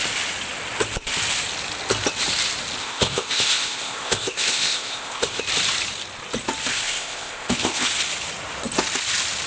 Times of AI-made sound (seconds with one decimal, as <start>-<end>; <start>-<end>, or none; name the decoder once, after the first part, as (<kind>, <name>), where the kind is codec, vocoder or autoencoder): 2.8-5.4 (codec, ZipCodec); 6.7-7.9